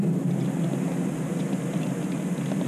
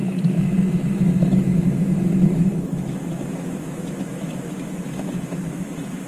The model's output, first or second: second